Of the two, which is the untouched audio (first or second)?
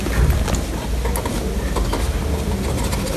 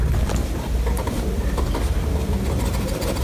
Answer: first